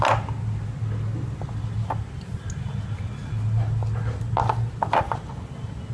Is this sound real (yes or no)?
yes